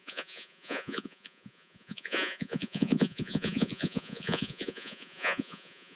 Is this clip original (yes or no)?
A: no